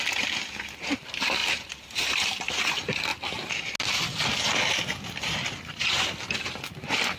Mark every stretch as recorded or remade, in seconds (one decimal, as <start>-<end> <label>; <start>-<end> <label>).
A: 0.0-1.4 recorded; 1.4-2.5 remade; 2.5-7.2 recorded